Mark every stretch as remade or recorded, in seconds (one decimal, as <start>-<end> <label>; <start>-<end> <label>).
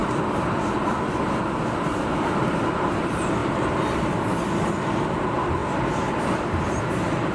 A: 0.0-2.7 remade; 2.7-5.6 recorded; 5.6-6.6 remade; 6.6-7.3 recorded